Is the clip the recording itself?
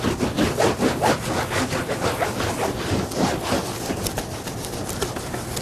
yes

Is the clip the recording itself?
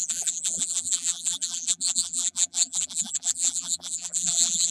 no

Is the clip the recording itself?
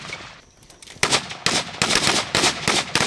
yes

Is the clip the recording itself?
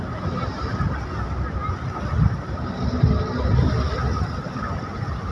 yes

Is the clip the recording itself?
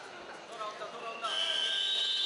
yes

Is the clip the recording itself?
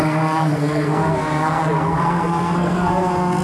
no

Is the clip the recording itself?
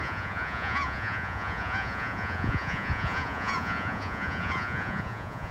no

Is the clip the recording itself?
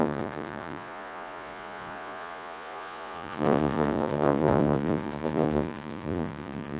no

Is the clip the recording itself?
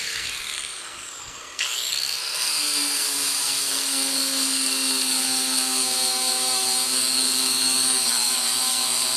no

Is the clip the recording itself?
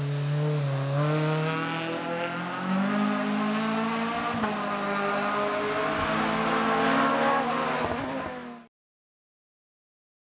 yes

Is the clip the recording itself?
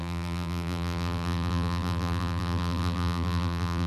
no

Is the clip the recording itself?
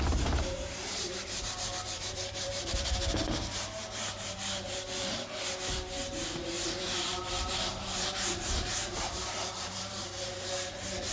no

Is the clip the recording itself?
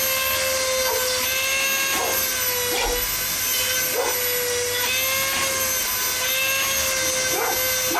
yes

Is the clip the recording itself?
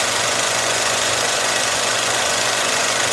no